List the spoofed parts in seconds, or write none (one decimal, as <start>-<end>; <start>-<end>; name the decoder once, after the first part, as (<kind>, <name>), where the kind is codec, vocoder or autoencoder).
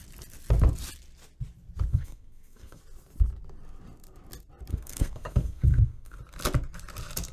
1.9-2.8 (codec, SNAC); 4.7-6.2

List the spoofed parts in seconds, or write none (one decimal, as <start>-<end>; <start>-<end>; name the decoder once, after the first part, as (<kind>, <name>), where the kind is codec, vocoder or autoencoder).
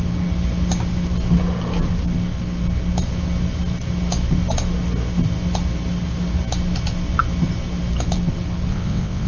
8.7-9.3 (vocoder, WaveNeXt)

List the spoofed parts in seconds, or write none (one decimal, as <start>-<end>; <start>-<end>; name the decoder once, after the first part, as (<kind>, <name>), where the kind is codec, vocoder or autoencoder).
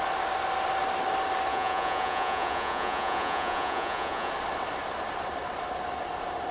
1.5-4.3 (vocoder, Vocos)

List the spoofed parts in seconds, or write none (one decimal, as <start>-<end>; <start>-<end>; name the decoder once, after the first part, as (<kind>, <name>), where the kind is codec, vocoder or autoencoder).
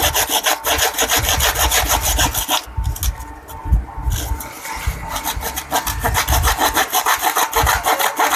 none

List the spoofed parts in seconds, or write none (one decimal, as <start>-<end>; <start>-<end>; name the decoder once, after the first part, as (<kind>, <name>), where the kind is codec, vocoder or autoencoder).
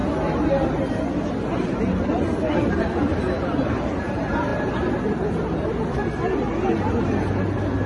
4.5-5.0 (vocoder, BigVGAN v2)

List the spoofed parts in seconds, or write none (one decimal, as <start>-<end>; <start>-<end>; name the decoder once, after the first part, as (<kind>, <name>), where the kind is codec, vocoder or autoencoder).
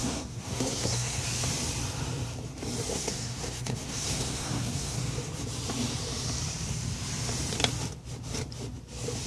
0.0-1.2 (codec, SNAC); 2.9-5.0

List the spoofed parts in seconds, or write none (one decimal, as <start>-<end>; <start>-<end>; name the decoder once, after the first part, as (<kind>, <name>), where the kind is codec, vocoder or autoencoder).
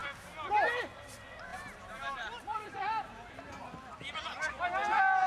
1.5-3.3 (vocoder, BigVGAN v2)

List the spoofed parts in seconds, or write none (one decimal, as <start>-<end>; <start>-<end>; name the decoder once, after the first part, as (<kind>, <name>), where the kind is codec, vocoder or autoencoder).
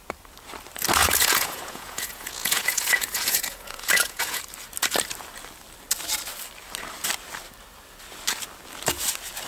1.0-4.4 (vocoder, Vocos)